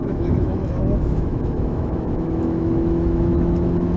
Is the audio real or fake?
fake